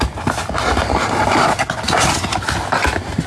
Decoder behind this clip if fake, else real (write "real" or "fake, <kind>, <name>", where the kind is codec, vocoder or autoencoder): real